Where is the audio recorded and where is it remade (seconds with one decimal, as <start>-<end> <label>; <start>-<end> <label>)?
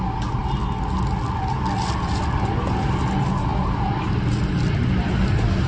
0.0-5.7 recorded